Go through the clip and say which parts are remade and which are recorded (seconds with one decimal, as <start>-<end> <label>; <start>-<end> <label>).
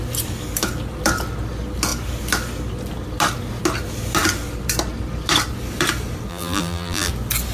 0.0-6.3 recorded; 6.3-7.1 remade; 7.1-7.5 recorded